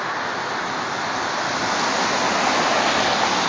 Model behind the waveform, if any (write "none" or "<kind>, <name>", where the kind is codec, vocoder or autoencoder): none